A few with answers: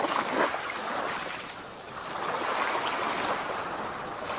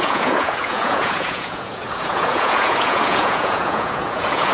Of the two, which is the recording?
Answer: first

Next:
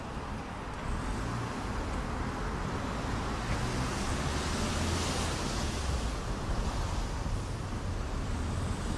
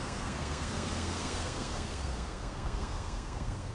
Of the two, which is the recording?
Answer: first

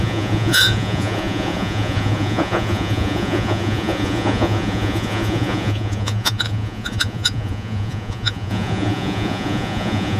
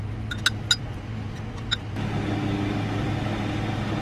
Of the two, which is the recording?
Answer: second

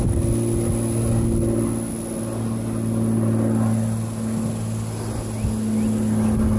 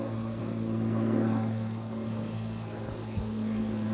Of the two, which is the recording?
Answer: first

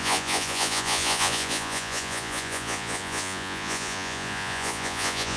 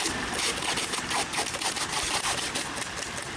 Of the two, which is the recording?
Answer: second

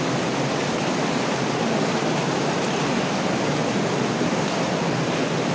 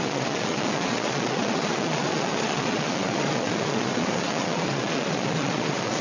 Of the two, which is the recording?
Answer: first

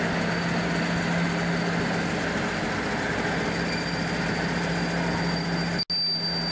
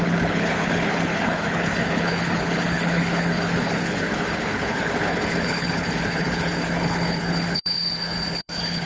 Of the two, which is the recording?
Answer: first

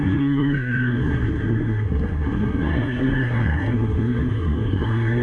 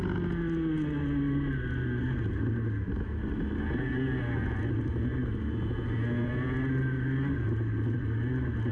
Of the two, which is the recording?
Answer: second